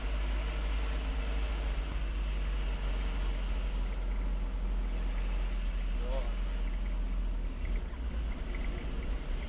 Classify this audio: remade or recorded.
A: recorded